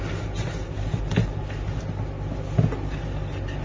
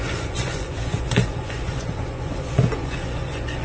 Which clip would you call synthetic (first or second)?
second